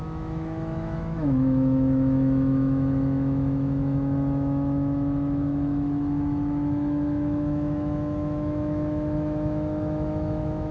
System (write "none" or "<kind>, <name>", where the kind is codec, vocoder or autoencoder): autoencoder, DAC-VAE